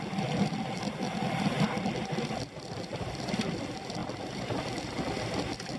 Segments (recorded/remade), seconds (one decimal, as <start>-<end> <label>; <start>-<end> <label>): 0.0-4.0 recorded; 4.0-4.6 remade; 4.6-5.8 recorded